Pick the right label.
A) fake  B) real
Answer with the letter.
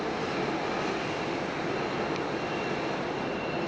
B